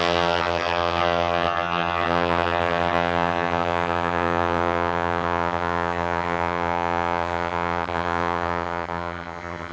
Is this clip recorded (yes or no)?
no